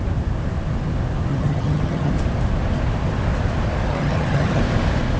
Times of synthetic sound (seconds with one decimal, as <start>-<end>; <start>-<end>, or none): 1.3-2.1; 3.9-4.6